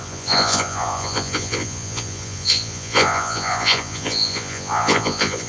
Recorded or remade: remade